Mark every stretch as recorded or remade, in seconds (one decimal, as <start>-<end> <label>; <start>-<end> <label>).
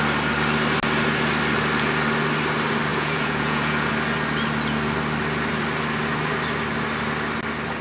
0.0-2.9 recorded; 2.9-3.9 remade; 3.9-7.8 recorded